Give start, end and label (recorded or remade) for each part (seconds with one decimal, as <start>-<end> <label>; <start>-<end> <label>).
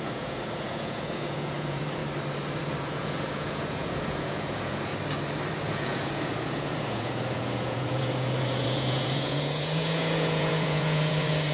0.0-2.0 remade; 2.0-2.8 recorded; 2.8-4.9 remade; 4.9-5.6 recorded; 5.6-11.5 remade